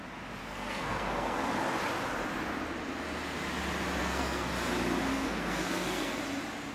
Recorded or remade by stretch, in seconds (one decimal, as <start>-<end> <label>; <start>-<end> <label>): 0.0-0.4 recorded; 0.4-1.5 remade; 1.5-4.0 recorded; 4.0-4.5 remade; 4.5-5.1 recorded; 5.1-6.2 remade; 6.2-6.7 recorded